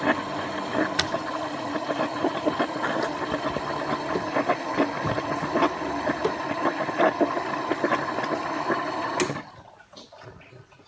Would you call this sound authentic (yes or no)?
yes